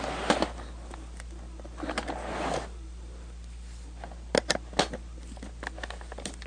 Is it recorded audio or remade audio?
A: recorded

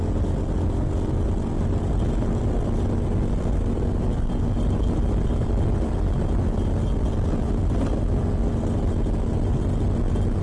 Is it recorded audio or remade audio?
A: recorded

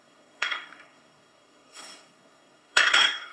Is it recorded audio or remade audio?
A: remade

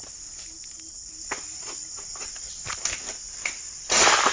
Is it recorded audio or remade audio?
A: recorded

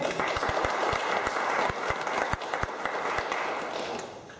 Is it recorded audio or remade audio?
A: recorded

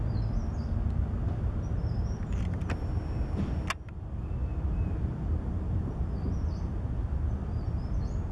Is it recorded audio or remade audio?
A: recorded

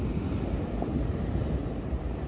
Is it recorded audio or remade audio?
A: recorded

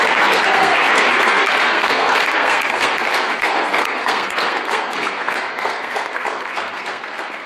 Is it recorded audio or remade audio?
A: remade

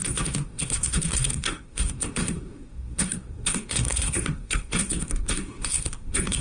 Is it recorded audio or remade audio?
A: remade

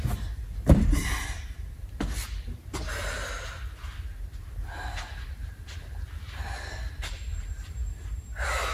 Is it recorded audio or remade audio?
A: recorded